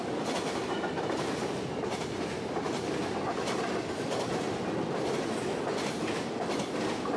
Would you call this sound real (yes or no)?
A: yes